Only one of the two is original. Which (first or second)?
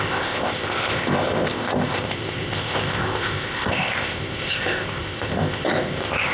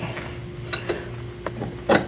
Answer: second